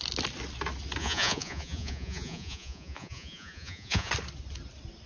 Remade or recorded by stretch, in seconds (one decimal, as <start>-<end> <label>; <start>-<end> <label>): 0.0-1.0 recorded; 1.0-4.1 remade; 4.1-5.1 recorded